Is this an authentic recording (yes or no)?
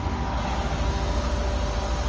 yes